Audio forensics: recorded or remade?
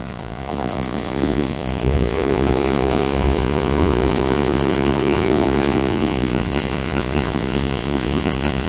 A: remade